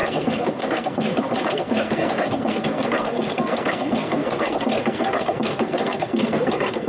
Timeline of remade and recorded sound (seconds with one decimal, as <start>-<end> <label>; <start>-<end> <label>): 0.0-6.9 remade